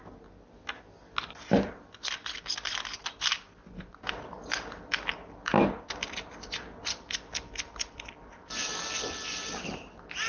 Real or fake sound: real